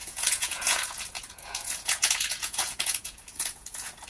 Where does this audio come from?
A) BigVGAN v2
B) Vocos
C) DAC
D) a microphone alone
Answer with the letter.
B